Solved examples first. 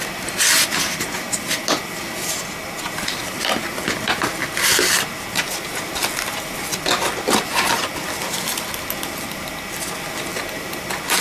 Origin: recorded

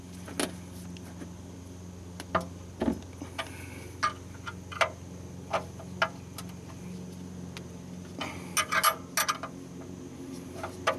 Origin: recorded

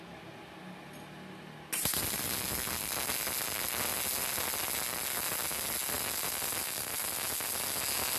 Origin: recorded